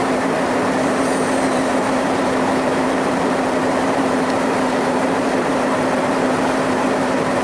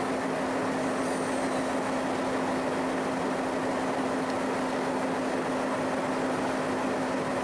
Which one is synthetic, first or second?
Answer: first